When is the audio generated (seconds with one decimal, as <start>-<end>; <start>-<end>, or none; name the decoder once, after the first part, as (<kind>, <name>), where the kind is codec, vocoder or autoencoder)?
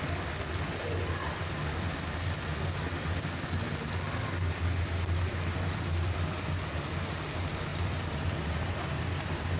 7.7-8.3 (vocoder, BigVGAN v2)